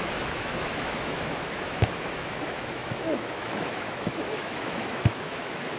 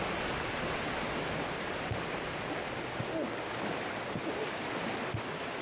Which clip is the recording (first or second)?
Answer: second